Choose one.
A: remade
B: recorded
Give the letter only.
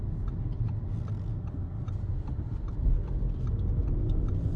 B